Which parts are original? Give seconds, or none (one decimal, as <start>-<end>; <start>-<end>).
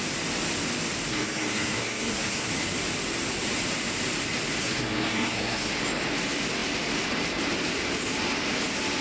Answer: 0.0-1.1; 2.5-4.6; 5.7-9.0